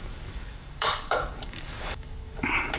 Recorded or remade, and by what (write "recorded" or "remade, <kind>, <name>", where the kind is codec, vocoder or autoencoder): remade, codec, DAC